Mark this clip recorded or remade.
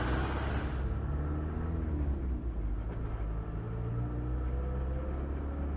recorded